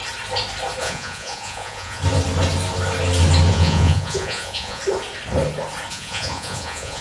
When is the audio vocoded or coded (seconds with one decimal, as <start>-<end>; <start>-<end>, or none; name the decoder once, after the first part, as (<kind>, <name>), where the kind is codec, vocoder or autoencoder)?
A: 0.8-2.0 (vocoder, Vocos); 3.5-4.8; 5.9-7.0